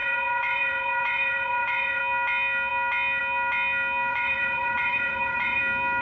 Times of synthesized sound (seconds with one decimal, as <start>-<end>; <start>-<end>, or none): 0.0-2.0; 4.1-5.6